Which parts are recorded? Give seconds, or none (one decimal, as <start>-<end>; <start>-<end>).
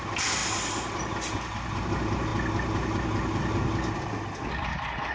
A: 0.0-5.1